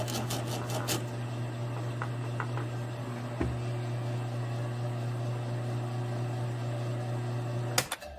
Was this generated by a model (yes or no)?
no